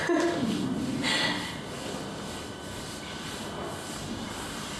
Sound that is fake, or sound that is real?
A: real